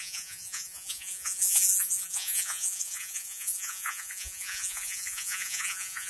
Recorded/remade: remade